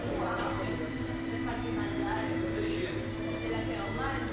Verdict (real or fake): real